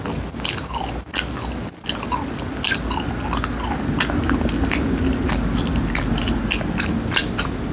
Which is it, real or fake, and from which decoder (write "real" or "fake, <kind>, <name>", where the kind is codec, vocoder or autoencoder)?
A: real